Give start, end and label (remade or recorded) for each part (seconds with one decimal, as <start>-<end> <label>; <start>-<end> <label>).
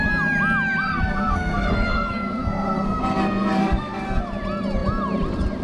0.0-0.8 recorded; 0.8-4.2 remade; 4.2-5.6 recorded